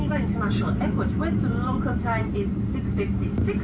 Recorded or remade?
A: recorded